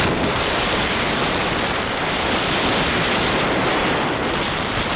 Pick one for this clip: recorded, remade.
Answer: recorded